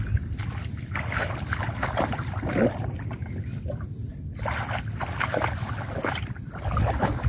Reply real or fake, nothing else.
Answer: real